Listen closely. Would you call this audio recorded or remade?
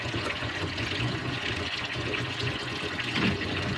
remade